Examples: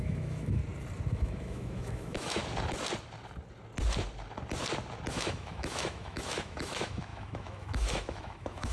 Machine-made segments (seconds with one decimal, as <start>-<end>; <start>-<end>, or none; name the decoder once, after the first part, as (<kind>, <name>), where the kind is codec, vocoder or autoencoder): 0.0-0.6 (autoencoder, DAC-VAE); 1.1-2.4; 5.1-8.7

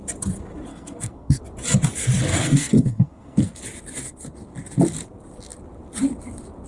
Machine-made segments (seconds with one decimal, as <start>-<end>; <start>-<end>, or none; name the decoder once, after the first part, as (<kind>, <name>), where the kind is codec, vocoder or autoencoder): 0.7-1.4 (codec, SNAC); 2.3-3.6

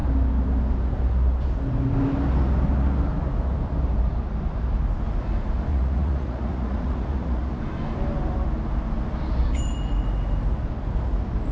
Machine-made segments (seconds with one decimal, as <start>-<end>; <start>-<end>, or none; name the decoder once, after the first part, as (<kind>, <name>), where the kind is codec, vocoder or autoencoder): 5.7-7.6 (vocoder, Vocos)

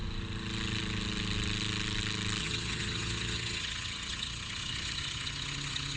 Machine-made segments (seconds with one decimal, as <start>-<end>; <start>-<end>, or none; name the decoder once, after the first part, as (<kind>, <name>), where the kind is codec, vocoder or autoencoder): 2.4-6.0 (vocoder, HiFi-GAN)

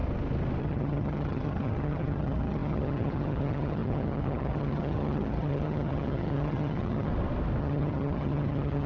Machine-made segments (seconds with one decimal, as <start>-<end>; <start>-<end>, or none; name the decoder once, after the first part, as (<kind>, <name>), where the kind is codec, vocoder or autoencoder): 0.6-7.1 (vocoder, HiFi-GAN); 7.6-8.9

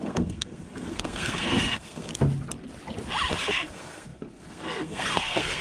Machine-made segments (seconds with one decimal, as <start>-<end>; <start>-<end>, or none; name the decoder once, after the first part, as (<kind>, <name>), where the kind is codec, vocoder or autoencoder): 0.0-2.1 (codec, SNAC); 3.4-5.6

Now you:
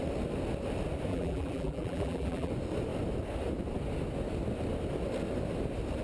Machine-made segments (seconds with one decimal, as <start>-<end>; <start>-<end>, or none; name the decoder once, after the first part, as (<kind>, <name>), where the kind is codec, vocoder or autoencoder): 1.1-2.5 (vocoder, BigVGAN v2)